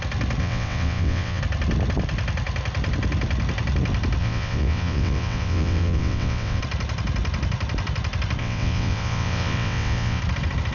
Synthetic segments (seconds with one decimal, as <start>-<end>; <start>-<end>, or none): 0.4-1.4; 4.2-6.6; 8.4-10.2